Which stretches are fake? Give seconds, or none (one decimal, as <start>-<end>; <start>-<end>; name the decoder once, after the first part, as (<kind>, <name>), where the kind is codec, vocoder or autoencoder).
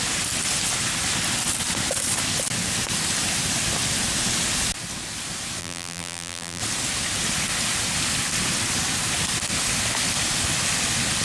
5.6-6.6 (vocoder, BigVGAN v2)